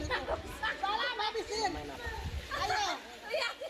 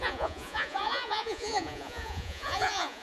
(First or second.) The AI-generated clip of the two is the second